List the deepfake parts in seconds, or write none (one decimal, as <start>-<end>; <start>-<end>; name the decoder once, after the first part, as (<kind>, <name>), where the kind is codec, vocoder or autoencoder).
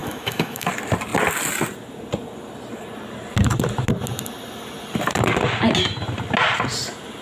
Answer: 0.0-0.7 (autoencoder, DAC-VAE)